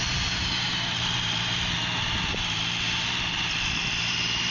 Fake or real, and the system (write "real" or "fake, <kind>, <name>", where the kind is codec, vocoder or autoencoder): fake, vocoder, BigVGAN v2